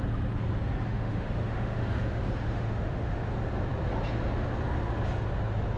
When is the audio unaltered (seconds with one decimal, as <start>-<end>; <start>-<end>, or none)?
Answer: 0.0-0.9; 3.2-5.8